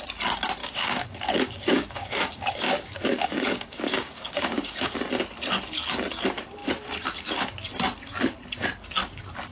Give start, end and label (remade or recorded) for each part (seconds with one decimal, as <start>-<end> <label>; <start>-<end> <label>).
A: 0.0-0.6 recorded; 0.6-4.9 remade; 4.9-9.5 recorded